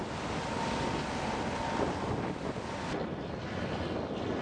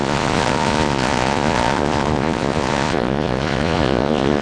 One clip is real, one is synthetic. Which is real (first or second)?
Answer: first